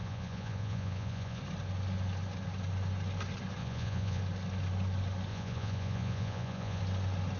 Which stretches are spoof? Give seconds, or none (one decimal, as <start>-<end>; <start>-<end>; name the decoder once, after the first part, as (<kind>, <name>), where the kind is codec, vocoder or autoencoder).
0.0-1.4 (vocoder, Vocos); 3.6-4.2; 5.3-6.8